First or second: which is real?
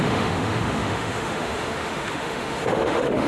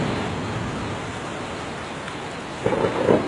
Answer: second